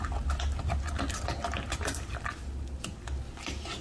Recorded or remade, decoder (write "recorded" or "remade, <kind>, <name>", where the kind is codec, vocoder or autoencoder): recorded